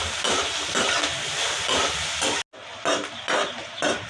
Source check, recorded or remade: recorded